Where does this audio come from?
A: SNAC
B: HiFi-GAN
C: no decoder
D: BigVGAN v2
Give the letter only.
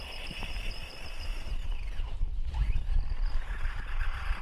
D